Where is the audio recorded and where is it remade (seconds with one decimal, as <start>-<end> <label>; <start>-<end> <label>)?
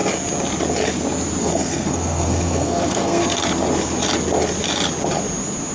0.0-1.4 recorded; 1.4-3.2 remade; 3.2-5.7 recorded